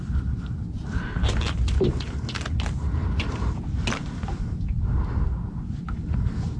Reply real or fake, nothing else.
real